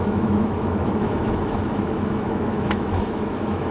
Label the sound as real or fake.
fake